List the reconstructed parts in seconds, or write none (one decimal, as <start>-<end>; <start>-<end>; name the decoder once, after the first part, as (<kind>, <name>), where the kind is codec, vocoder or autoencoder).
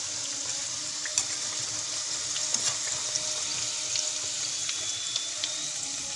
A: none